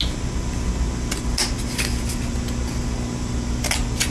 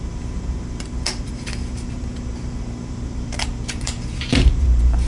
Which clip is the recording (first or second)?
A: first